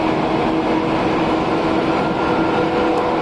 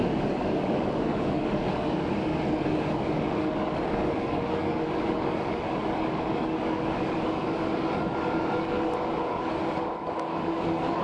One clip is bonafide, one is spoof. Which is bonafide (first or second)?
first